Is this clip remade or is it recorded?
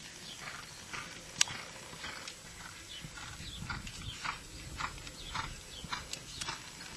recorded